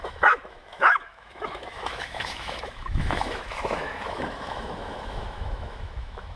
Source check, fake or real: fake